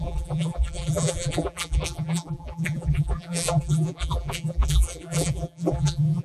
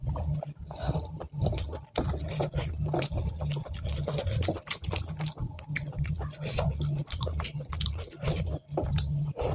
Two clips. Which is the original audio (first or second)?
second